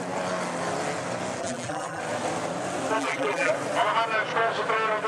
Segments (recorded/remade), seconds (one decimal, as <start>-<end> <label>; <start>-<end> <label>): 0.0-1.4 recorded; 1.4-2.0 remade; 2.0-3.0 recorded; 3.0-3.5 remade; 3.5-5.1 recorded